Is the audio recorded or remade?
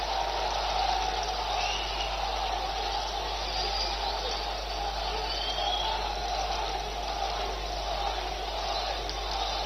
recorded